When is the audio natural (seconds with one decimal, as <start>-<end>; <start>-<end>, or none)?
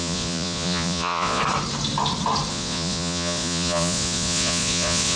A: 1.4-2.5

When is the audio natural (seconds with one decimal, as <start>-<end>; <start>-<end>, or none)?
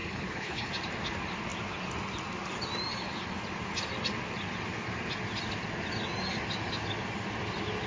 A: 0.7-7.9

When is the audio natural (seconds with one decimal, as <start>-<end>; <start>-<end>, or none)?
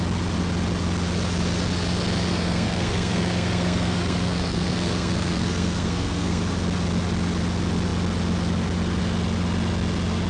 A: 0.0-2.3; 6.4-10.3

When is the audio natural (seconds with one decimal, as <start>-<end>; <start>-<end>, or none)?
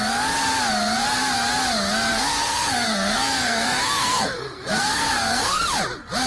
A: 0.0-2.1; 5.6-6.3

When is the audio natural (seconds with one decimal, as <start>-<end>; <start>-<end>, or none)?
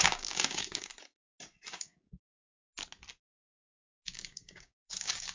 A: 0.9-1.7; 2.3-3.6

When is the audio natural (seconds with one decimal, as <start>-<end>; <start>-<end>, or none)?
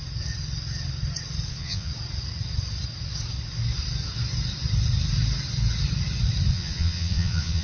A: 0.0-1.5; 1.9-6.5